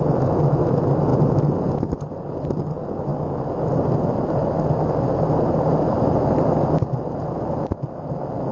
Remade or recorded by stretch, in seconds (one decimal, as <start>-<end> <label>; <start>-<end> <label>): 0.0-8.5 recorded